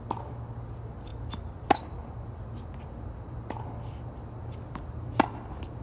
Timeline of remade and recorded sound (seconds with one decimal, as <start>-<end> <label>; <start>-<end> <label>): 0.0-5.8 recorded